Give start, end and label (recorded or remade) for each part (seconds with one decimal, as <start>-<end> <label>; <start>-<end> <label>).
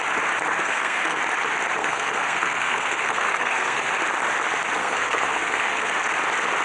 0.0-0.6 recorded; 0.6-1.2 remade; 1.2-1.8 recorded; 1.8-3.9 remade; 3.9-4.8 recorded; 4.8-5.9 remade; 5.9-6.6 recorded